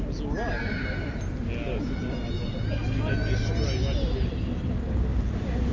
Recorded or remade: recorded